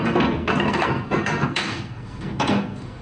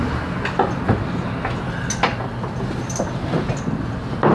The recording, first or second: second